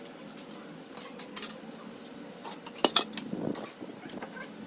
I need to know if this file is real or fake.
real